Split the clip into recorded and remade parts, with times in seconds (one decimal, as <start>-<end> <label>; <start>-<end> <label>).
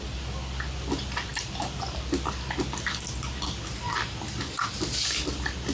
0.0-5.7 recorded